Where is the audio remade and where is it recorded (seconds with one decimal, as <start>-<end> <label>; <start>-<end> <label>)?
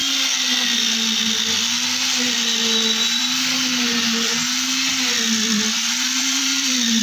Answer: 0.0-4.9 recorded; 4.9-7.0 remade